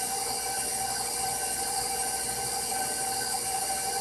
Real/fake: fake